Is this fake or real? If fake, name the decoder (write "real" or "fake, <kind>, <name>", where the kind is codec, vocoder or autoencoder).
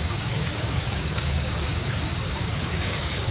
fake, codec, DAC